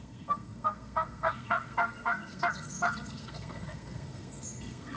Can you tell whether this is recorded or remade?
remade